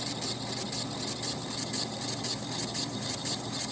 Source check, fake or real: real